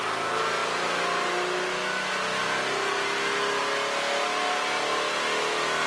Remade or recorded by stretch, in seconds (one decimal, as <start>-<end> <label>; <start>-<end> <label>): 0.0-5.9 recorded